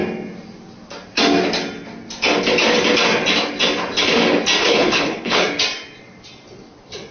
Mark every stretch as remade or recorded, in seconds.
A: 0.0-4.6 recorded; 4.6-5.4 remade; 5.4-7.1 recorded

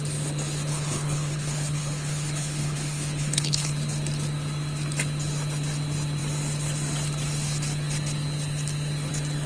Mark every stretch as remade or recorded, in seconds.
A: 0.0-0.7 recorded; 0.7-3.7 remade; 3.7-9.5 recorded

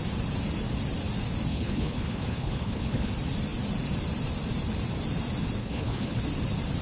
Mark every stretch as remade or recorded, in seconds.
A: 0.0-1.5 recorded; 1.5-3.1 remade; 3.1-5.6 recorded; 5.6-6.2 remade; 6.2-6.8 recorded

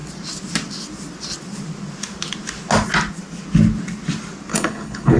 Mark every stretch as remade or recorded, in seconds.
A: 0.0-4.5 recorded; 4.5-5.2 remade

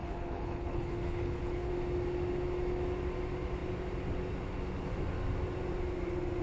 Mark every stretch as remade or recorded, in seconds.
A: 0.0-1.7 remade; 1.7-6.4 recorded

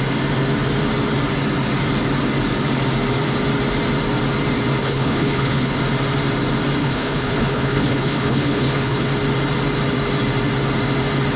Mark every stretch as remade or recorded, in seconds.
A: 0.0-4.8 recorded; 4.8-5.8 remade; 5.8-6.8 recorded; 6.8-9.1 remade; 9.1-11.4 recorded

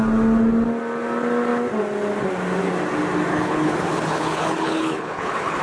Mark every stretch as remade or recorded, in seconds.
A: 0.0-3.3 recorded; 3.3-5.6 remade

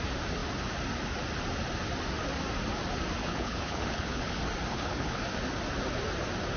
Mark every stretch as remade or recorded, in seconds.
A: 0.0-3.2 recorded; 3.2-4.3 remade; 4.3-4.7 recorded; 4.7-5.2 remade; 5.2-6.6 recorded